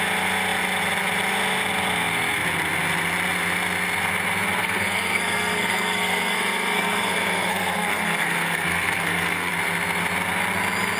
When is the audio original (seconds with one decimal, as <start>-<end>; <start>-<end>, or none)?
0.0-4.6; 9.5-11.0